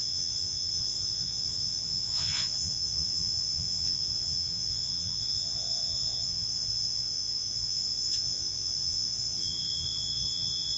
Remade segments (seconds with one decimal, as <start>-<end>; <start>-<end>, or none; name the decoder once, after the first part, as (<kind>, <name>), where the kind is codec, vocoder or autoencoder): 0.0-10.8 (vocoder, Vocos)